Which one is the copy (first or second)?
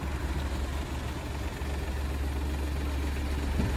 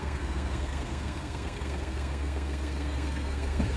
second